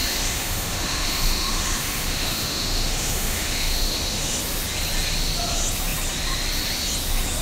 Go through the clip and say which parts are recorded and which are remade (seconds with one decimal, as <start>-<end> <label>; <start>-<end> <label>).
0.0-4.4 remade; 4.4-7.4 recorded